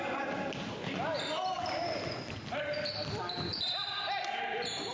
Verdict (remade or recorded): recorded